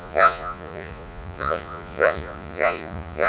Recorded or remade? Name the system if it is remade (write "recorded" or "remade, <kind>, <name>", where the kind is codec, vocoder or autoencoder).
remade, vocoder, Vocos